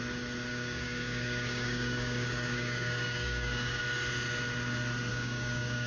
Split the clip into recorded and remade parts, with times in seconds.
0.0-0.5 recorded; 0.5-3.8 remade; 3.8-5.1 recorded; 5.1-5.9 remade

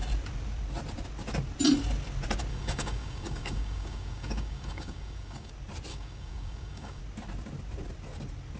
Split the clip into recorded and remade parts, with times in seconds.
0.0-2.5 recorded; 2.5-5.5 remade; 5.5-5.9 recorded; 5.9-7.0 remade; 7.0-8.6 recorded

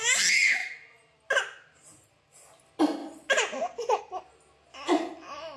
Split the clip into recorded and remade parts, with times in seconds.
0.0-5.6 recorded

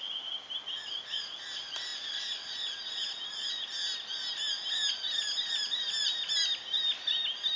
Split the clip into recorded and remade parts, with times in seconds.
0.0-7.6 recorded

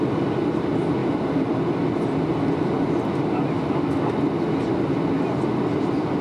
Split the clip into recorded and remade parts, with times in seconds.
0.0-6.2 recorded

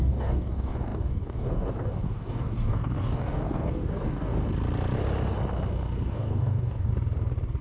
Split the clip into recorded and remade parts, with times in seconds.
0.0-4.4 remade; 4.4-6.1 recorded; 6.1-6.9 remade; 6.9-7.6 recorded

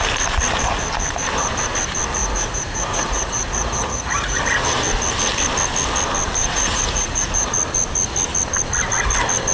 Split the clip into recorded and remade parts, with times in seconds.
0.0-2.2 recorded; 2.2-4.4 remade; 4.4-6.4 recorded; 6.4-7.5 remade; 7.5-9.5 recorded

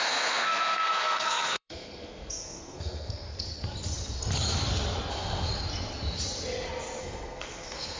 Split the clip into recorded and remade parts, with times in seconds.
0.0-3.3 remade; 3.3-5.1 recorded; 5.1-5.5 remade; 5.5-7.0 recorded; 7.0-8.0 remade